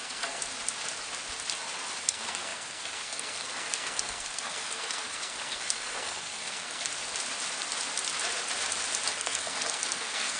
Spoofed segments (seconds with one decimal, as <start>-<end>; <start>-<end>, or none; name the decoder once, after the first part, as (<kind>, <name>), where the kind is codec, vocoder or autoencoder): 0.0-0.4 (codec, SNAC); 2.0-6.9; 9.1-10.4